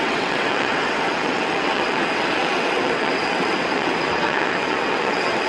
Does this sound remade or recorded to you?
remade